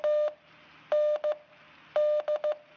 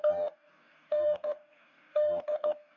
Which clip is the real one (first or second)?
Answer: first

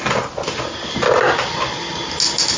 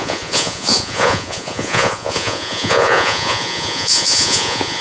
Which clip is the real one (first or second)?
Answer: first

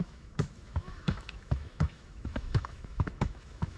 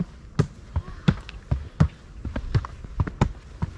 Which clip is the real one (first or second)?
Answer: second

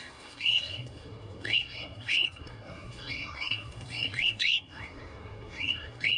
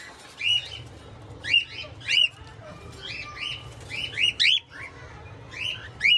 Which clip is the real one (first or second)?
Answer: second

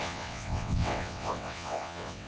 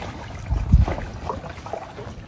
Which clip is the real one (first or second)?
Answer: second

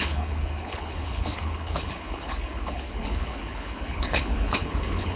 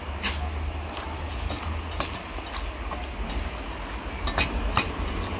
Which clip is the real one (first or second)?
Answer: second